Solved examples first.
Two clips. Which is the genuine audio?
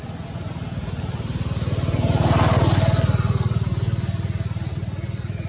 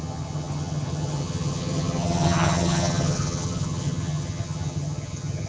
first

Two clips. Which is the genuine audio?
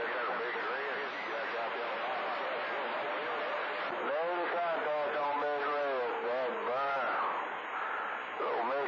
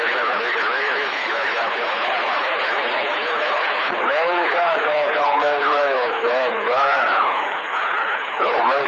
first